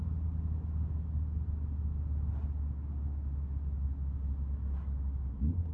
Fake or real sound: real